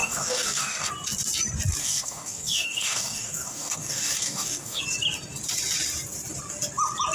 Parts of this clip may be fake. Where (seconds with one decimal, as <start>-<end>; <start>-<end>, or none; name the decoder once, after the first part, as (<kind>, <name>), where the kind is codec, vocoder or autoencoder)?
0.0-0.9 (codec, DAC); 1.8-4.8